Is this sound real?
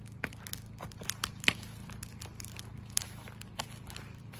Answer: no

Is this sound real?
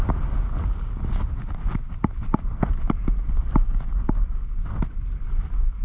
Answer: yes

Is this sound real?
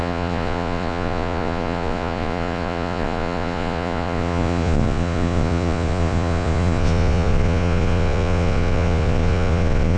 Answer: no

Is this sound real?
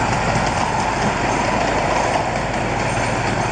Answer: yes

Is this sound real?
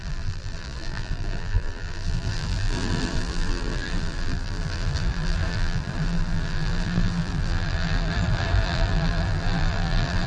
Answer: no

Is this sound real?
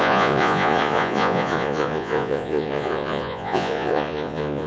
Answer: no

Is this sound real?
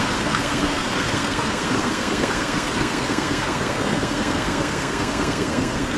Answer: no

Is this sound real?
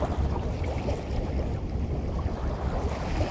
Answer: yes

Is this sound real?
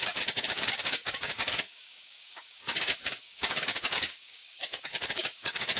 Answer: no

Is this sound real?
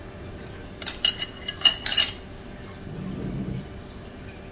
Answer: yes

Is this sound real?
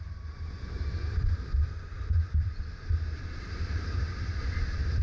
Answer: no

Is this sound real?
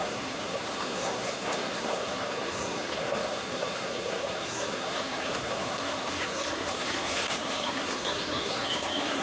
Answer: no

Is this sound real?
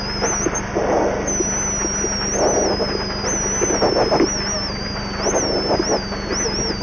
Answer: yes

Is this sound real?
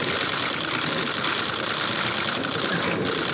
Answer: yes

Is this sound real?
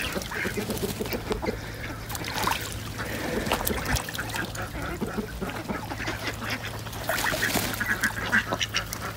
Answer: yes